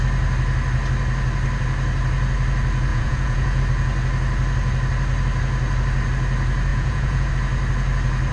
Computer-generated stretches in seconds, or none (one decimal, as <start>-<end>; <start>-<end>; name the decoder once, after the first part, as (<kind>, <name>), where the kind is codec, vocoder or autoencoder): 2.9-3.6 (vocoder, Vocos); 6.7-7.3